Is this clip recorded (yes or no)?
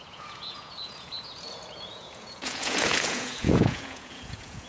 no